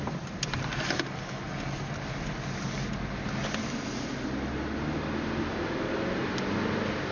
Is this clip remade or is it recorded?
recorded